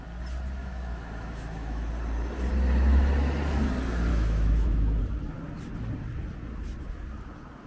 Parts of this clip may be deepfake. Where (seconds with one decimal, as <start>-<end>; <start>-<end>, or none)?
0.6-1.9; 4.1-5.0